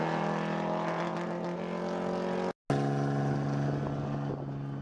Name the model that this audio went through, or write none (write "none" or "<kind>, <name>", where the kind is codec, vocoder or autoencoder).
none